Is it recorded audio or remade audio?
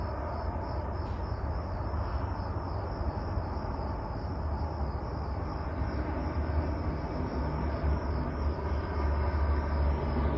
recorded